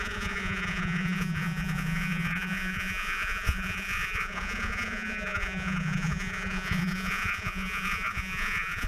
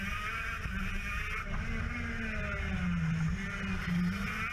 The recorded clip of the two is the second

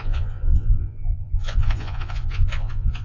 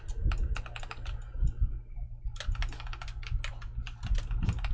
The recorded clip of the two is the second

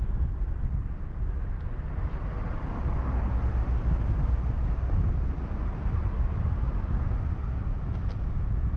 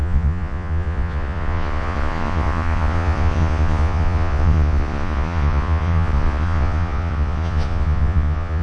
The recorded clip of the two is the first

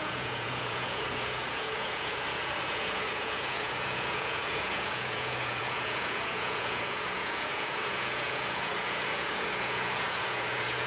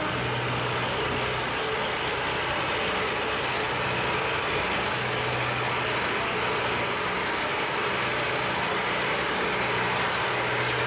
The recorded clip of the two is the second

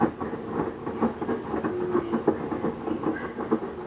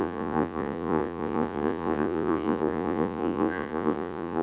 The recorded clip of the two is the first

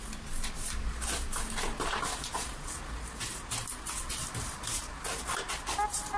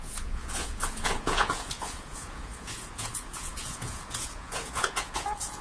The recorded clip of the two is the first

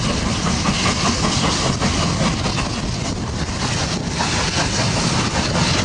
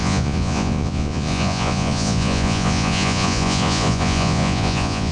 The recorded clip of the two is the first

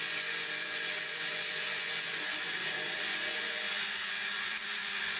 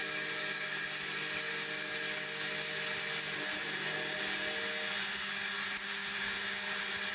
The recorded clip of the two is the second